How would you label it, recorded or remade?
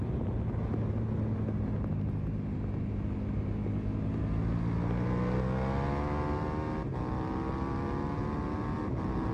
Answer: recorded